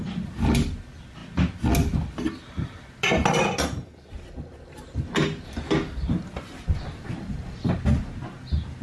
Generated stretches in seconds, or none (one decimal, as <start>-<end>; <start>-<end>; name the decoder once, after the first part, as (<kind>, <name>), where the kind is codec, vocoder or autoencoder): none